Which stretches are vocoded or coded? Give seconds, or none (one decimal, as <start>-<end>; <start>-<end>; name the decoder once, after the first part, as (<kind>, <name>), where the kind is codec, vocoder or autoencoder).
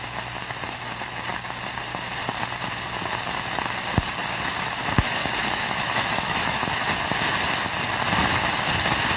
5.4-6.6 (autoencoder, DAC-VAE)